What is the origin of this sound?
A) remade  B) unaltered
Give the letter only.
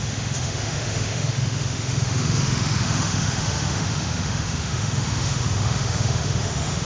A